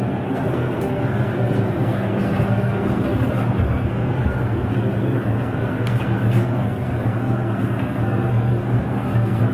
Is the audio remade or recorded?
remade